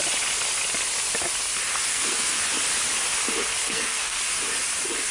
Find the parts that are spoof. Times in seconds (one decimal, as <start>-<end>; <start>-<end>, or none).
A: 1.9-2.4; 3.6-4.2